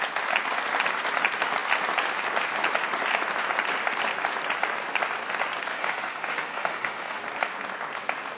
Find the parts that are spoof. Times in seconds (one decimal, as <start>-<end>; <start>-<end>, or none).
5.7-7.2